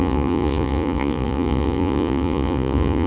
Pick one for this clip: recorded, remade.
remade